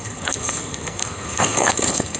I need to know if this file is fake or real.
fake